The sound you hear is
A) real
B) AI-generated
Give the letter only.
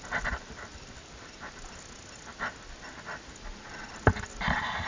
A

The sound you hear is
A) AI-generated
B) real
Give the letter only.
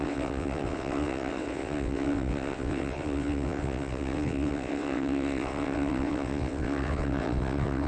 A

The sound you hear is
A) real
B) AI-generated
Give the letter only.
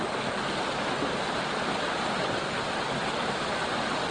A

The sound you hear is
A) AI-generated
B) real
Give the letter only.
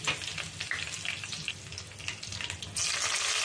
B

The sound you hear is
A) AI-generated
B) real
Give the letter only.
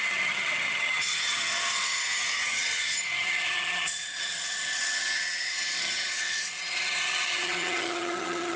A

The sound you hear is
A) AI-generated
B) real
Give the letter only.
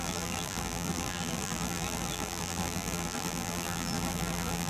A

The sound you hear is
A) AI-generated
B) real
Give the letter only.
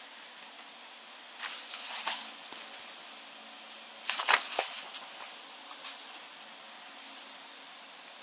B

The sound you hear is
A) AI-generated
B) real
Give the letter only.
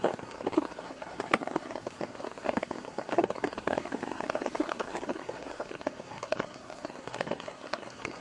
A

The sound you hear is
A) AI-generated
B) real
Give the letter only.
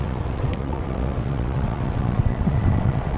A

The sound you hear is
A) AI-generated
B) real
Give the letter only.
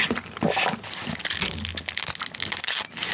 B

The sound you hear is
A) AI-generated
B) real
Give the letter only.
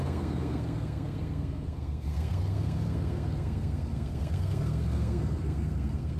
A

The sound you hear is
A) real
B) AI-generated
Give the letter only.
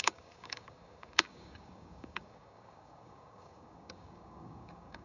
B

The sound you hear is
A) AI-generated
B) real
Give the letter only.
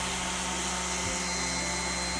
B